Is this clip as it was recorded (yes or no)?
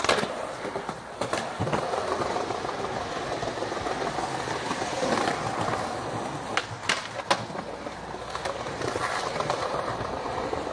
yes